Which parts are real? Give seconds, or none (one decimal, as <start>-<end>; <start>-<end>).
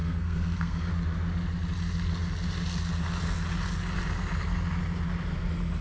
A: 0.9-5.8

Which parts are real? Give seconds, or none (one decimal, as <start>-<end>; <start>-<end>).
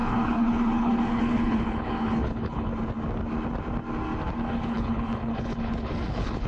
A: 2.7-4.5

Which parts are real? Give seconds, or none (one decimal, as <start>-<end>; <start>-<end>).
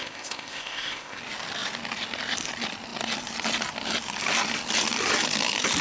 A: 1.2-5.8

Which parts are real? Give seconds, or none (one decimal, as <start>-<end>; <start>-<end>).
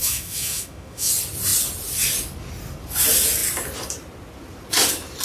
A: 1.1-5.2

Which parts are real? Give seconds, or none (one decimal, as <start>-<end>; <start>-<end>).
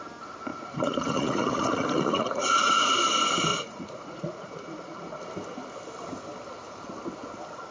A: 0.0-0.5; 2.7-3.5; 5.2-7.7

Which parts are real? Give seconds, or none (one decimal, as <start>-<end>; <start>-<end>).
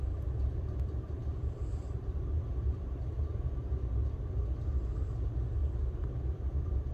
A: 0.0-1.2; 3.4-5.6